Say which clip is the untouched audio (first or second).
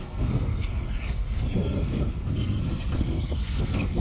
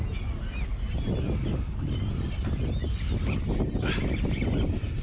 second